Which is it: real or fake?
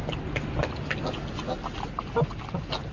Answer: real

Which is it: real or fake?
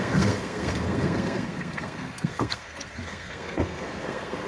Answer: fake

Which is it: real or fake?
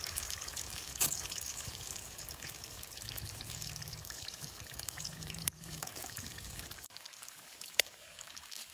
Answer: fake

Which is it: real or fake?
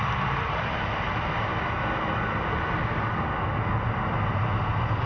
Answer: real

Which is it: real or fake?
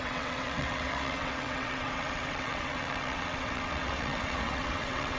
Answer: fake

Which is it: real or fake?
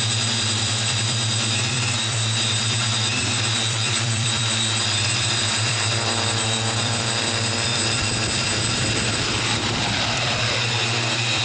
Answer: fake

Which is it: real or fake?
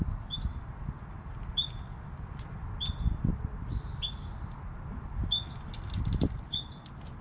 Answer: real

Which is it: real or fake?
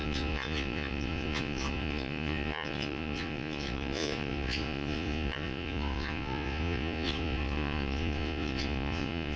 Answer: fake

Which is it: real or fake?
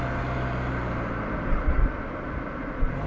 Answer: real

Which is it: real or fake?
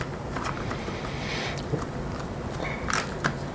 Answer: fake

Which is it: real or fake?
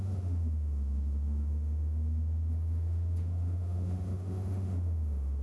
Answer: fake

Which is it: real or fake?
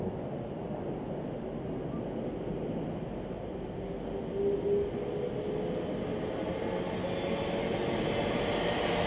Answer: real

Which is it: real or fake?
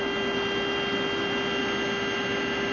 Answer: real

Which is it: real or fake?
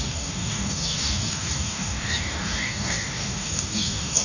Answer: fake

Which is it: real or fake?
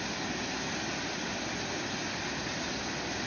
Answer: real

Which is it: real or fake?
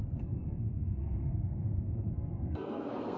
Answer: fake